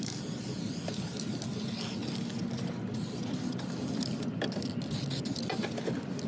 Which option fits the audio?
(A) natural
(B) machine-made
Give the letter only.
A